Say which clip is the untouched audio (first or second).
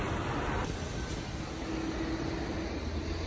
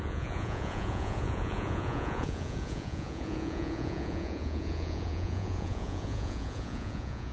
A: first